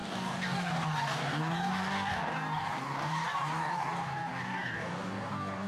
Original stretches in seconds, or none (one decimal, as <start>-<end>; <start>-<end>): none